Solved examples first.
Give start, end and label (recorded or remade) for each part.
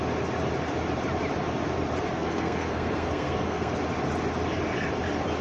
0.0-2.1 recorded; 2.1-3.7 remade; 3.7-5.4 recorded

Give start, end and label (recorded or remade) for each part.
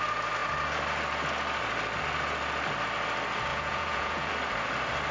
0.0-3.5 recorded; 3.5-4.3 remade; 4.3-5.1 recorded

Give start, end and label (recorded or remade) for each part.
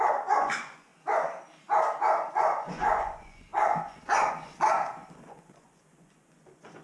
0.0-0.9 remade; 0.9-2.3 recorded; 2.3-6.8 remade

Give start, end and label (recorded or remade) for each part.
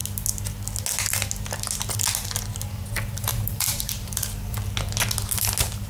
0.0-3.3 recorded; 3.3-4.7 remade; 4.7-5.9 recorded